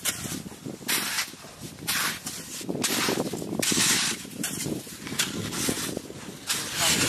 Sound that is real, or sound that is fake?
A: fake